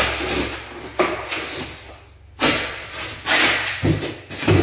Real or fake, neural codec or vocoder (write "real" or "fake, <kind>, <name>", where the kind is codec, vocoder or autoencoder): real